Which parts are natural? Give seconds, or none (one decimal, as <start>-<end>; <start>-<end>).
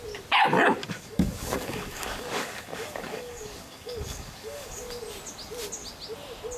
0.0-0.8; 4.8-6.6